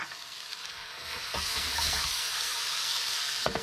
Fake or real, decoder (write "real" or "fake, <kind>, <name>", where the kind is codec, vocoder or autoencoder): fake, codec, SNAC